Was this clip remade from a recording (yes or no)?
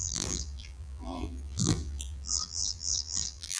yes